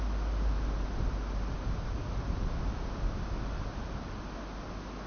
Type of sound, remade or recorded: recorded